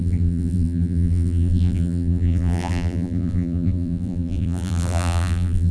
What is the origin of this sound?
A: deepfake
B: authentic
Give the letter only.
A